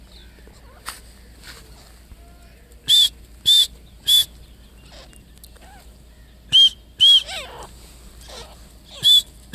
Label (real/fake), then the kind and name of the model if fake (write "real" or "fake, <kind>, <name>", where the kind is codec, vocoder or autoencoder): real